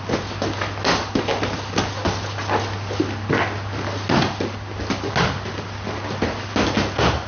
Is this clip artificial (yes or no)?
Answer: no